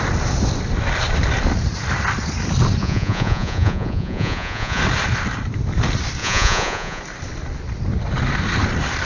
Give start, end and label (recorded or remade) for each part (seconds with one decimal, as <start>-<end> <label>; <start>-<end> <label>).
0.0-2.8 recorded; 2.8-4.8 remade; 4.8-6.2 recorded; 6.2-7.0 remade; 7.0-9.1 recorded